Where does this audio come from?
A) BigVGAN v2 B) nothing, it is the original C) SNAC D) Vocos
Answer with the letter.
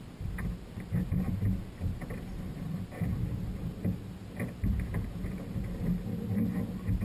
B